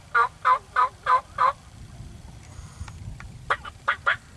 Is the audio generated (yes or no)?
yes